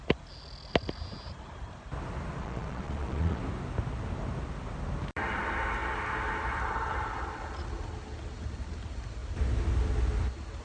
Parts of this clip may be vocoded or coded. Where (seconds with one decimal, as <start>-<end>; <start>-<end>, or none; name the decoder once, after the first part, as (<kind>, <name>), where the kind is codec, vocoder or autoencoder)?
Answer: 2.4-3.4 (vocoder, Vocos)